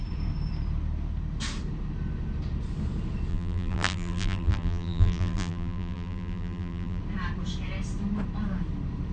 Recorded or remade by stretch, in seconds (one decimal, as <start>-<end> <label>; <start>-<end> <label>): 0.0-3.3 recorded; 3.3-7.0 remade; 7.0-9.1 recorded